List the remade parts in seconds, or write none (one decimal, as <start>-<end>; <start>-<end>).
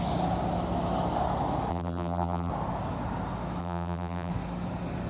1.7-2.5; 3.6-4.3